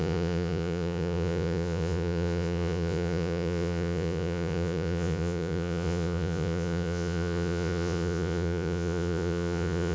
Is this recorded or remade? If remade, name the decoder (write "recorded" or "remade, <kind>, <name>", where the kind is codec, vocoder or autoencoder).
remade, vocoder, Vocos